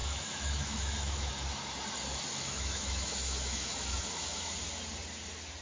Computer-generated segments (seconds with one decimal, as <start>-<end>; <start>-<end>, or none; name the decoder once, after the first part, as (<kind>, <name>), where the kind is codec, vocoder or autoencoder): 0.0-1.3 (autoencoder, DAC-VAE); 2.3-4.5